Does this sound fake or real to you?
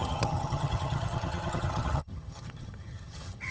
fake